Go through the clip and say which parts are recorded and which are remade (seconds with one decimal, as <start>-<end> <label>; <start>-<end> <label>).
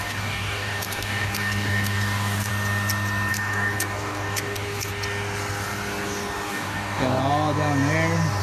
0.0-2.5 remade; 2.5-3.3 recorded; 3.3-4.9 remade; 4.9-6.5 recorded; 6.5-7.2 remade; 7.2-8.4 recorded